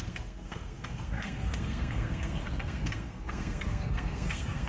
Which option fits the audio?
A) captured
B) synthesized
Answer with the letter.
B